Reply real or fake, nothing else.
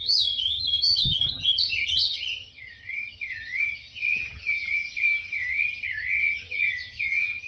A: fake